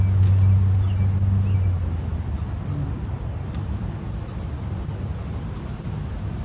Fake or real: real